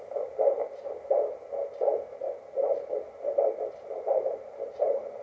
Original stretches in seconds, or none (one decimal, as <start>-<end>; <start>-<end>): 0.6-3.7